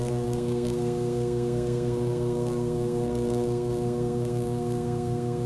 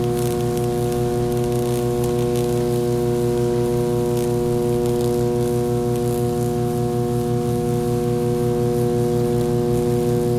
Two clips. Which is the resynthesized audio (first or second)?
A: first